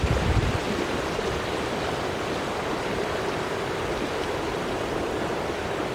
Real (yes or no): yes